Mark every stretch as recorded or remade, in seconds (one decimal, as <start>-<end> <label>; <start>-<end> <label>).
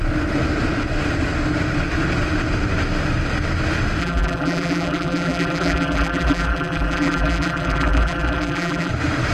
0.0-4.0 recorded; 4.0-8.9 remade; 8.9-9.3 recorded